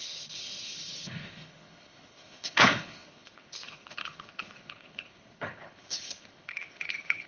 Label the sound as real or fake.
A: fake